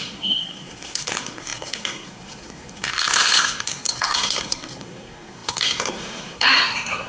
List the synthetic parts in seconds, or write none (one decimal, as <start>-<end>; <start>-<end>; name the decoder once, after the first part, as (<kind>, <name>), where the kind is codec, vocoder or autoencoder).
0.0-7.1 (codec, SNAC)